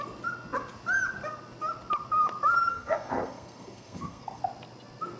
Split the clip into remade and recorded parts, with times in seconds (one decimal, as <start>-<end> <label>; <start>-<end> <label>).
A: 0.0-2.7 recorded; 2.7-4.4 remade; 4.4-5.2 recorded